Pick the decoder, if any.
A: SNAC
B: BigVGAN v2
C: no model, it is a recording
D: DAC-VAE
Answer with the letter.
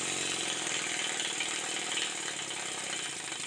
B